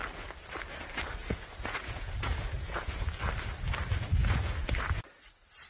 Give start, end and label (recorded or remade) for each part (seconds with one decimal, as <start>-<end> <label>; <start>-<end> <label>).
0.0-1.2 recorded; 1.2-3.1 remade; 3.1-4.2 recorded; 4.2-5.0 remade; 5.0-5.7 recorded